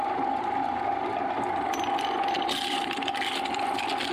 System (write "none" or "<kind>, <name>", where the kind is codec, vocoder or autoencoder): vocoder, BigVGAN v2